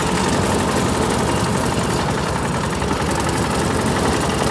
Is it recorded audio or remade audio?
recorded